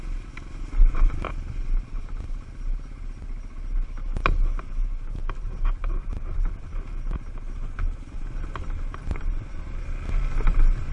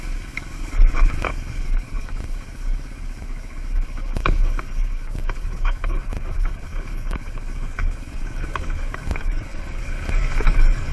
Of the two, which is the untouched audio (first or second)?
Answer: first